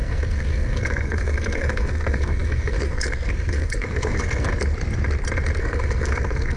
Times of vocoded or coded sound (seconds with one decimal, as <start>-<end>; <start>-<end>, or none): 0.0-4.5; 5.6-6.6